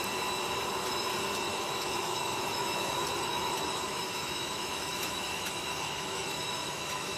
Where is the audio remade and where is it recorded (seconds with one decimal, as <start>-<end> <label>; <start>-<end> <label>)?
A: 0.0-1.5 recorded; 1.5-2.9 remade; 2.9-3.3 recorded; 3.3-7.2 remade